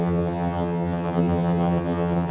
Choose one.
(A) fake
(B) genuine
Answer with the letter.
A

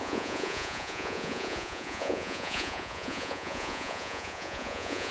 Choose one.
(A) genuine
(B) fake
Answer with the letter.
B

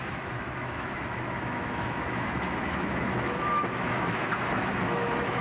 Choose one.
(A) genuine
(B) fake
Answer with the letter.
B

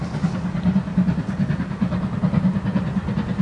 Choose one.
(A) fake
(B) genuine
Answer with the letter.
B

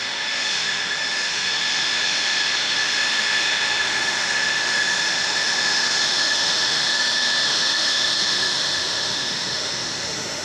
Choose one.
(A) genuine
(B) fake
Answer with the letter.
B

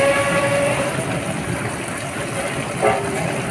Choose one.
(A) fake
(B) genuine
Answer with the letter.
B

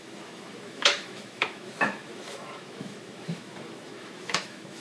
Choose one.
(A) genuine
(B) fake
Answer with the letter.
B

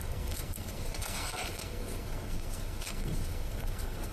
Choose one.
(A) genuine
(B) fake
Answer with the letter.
B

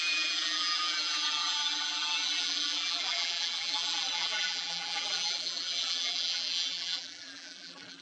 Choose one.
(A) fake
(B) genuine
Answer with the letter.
A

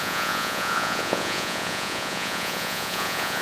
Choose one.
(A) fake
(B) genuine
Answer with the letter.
A